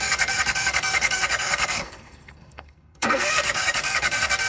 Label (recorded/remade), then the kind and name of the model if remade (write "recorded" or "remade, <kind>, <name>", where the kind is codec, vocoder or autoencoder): remade, codec, SNAC